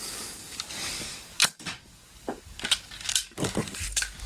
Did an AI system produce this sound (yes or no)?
yes